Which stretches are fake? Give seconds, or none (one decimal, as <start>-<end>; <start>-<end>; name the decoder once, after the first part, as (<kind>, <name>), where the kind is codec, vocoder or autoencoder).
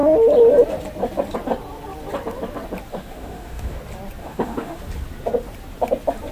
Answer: 2.9-3.8 (autoencoder, DAC-VAE); 4.2-4.8